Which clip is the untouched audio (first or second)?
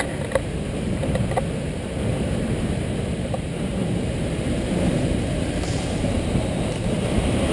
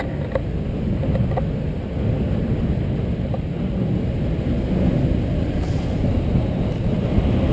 second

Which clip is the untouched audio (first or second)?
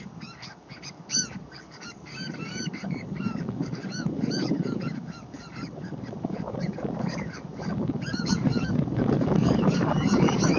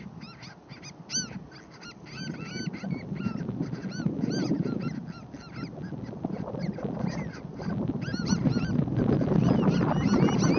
second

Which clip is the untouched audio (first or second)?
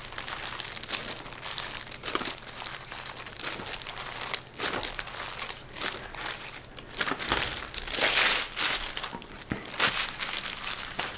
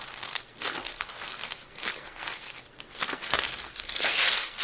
first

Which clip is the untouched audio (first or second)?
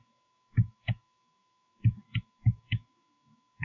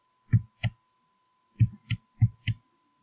second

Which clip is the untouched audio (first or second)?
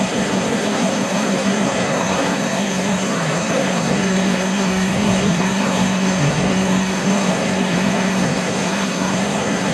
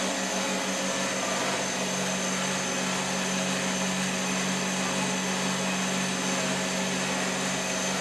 second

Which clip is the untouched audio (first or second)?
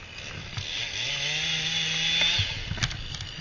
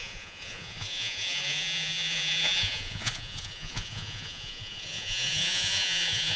first